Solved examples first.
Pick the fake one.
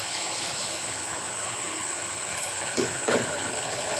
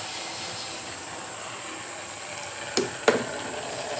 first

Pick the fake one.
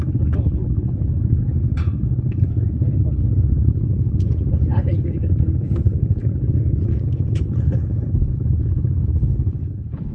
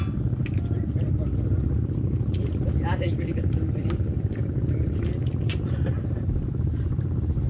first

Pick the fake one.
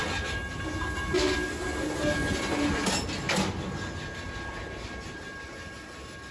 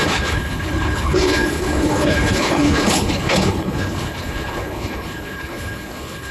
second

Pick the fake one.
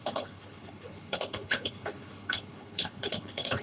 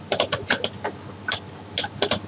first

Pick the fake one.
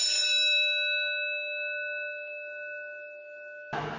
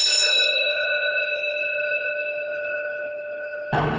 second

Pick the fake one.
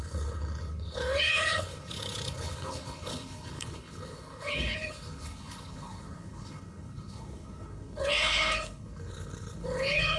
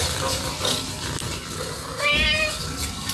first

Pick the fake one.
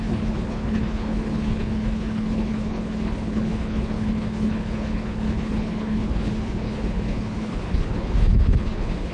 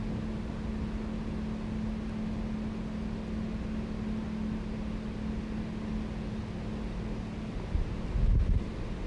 first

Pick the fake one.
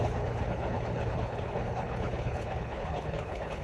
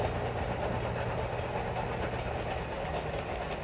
first